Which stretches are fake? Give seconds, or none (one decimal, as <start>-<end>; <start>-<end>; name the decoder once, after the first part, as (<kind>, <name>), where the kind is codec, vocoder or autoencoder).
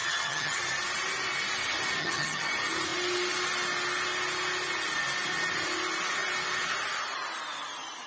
0.0-0.6 (vocoder, HiFi-GAN); 2.0-2.5